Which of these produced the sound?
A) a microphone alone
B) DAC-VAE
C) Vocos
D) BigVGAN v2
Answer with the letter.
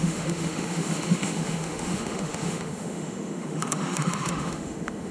B